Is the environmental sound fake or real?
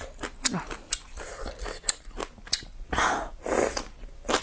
real